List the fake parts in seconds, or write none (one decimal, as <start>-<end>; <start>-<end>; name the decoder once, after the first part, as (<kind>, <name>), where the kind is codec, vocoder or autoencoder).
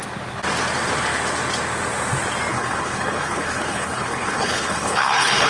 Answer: 2.5-5.5 (codec, HILCodec)